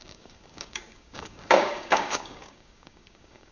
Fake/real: fake